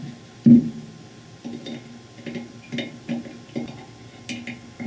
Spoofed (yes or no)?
no